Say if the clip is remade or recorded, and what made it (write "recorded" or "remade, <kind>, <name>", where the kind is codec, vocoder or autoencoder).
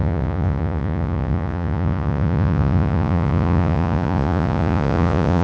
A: remade, vocoder, Vocos